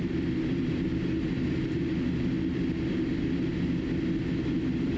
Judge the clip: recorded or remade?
recorded